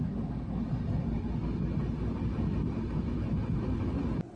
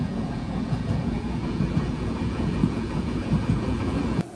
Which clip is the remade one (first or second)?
second